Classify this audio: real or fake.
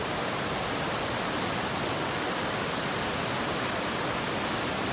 real